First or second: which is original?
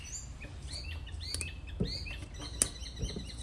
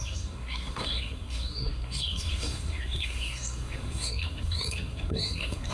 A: first